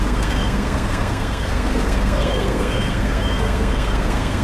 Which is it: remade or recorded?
remade